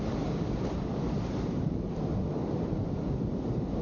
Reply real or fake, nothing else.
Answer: real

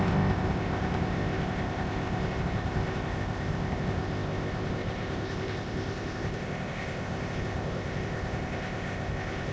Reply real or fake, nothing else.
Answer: fake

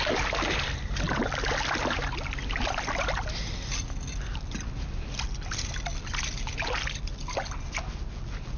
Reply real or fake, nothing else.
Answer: real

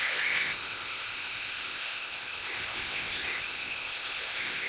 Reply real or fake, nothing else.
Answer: fake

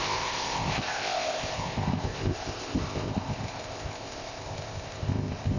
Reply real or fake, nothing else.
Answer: fake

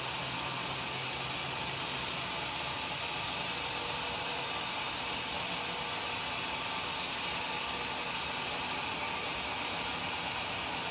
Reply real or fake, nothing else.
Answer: real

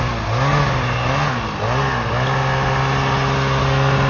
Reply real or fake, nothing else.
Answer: real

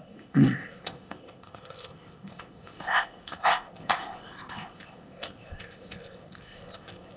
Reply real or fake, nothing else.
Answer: fake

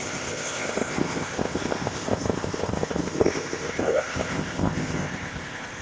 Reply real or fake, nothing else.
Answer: fake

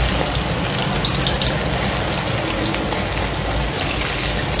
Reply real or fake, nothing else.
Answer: real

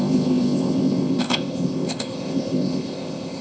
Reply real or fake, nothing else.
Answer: fake